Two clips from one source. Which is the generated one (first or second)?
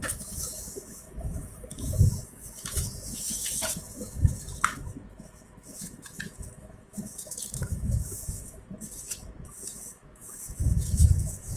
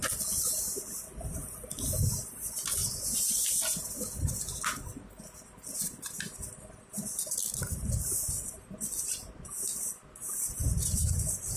first